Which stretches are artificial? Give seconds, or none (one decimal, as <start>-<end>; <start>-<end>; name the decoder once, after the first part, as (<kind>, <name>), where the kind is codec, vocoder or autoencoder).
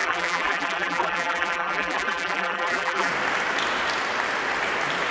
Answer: 0.0-3.1 (vocoder, BigVGAN v2)